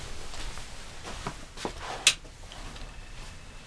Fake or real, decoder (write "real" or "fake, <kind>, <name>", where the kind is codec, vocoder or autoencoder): real